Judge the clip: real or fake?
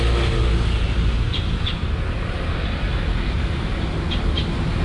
real